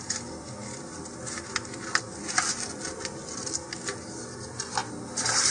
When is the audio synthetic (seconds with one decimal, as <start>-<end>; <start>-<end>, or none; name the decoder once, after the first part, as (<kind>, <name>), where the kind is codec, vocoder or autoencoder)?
none